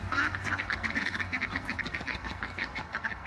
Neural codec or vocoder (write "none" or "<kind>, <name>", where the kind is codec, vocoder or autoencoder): codec, SNAC